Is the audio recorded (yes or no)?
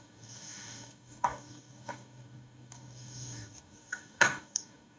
no